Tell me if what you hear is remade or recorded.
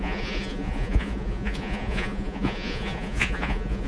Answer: remade